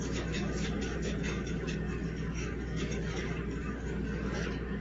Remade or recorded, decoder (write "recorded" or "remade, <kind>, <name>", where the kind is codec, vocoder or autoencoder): remade, codec, DAC